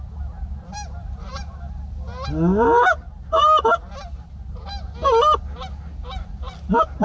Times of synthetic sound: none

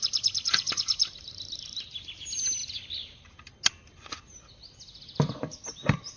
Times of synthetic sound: none